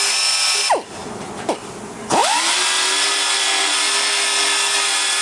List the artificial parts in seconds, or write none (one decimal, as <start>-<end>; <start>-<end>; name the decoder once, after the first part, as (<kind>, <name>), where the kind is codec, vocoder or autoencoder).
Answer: 1.0-1.8 (vocoder, BigVGAN v2)